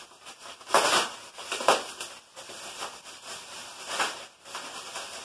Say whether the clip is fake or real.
real